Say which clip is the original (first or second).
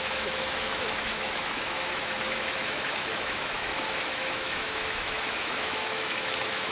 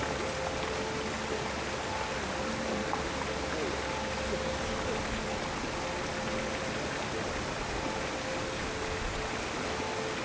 second